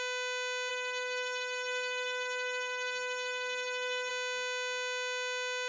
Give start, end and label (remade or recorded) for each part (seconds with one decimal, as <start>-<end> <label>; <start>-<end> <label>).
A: 0.0-0.7 recorded; 0.7-4.1 remade; 4.1-5.7 recorded